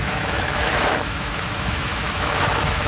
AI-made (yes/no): yes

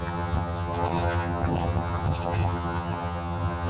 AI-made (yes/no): yes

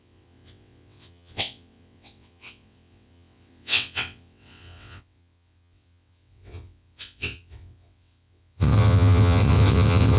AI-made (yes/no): yes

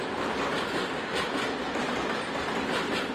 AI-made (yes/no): no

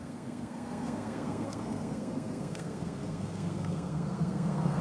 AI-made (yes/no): yes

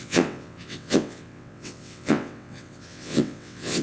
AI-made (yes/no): yes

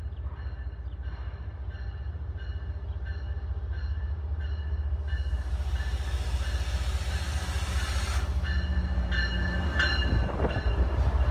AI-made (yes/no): no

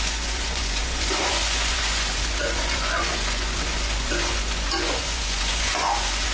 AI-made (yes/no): yes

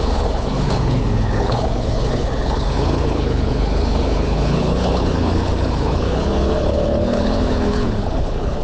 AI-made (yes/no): yes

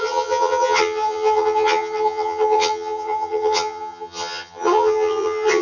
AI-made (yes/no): yes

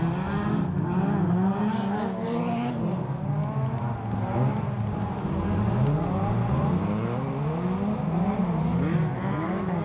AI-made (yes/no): no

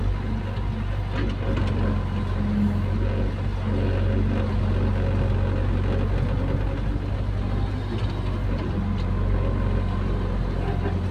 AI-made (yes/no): no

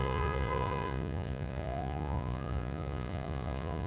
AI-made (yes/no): yes